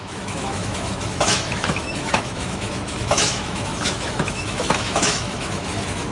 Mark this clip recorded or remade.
remade